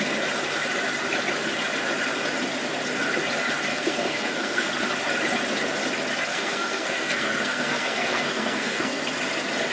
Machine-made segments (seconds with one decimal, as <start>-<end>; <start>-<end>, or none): 3.7-4.7; 6.3-9.0

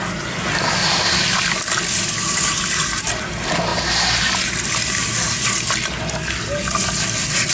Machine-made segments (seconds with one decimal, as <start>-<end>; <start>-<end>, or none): none

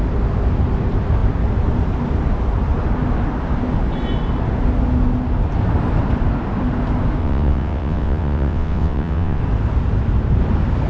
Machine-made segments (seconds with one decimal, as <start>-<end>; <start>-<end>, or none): 7.2-9.4

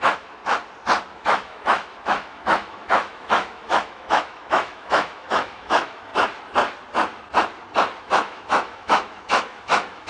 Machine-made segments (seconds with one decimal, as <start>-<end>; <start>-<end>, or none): 0.0-0.4; 1.1-6.1; 8.0-10.1

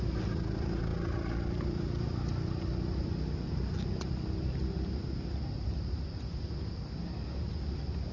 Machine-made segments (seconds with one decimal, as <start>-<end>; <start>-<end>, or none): none